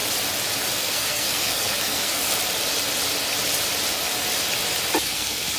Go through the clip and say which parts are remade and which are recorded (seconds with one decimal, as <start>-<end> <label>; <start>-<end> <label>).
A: 0.0-0.8 recorded; 0.8-2.2 remade; 2.2-5.0 recorded; 5.0-5.6 remade